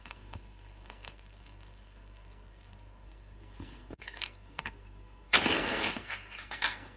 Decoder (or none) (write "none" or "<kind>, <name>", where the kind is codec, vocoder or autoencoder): codec, SNAC